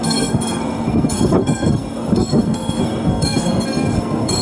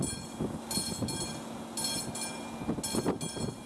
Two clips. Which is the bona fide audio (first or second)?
second